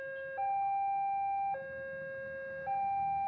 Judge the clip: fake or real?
real